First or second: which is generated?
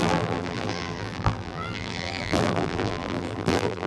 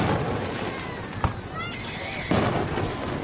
first